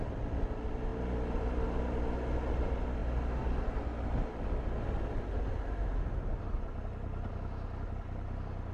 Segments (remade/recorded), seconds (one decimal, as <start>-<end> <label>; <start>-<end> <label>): 0.0-8.7 recorded

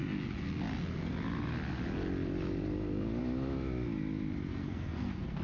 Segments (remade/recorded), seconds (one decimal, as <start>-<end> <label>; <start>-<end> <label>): 0.0-4.5 recorded; 4.5-5.4 remade

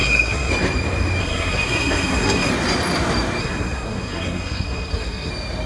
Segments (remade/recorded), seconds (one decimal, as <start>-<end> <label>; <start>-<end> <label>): 0.0-0.5 remade; 0.5-1.2 recorded; 1.2-2.5 remade; 2.5-3.4 recorded; 3.4-5.3 remade; 5.3-5.7 recorded

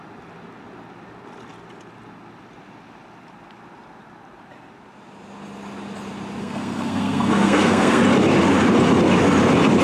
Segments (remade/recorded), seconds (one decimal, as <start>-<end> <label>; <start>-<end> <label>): 0.0-6.4 recorded; 6.4-8.0 remade; 8.0-9.8 recorded

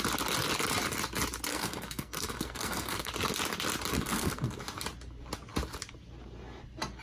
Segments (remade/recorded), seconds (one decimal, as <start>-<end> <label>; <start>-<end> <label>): 0.0-1.5 recorded; 1.5-3.1 remade; 3.1-3.9 recorded; 3.9-4.6 remade; 4.6-7.0 recorded

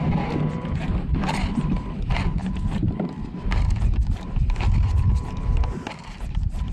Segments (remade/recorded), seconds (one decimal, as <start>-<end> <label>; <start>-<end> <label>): 0.0-6.7 recorded

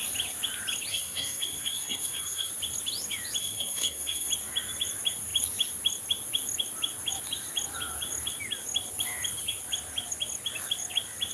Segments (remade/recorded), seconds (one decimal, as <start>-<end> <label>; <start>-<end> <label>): 0.0-0.9 recorded; 0.9-2.5 remade; 2.5-3.4 recorded; 3.4-4.3 remade; 4.3-11.3 recorded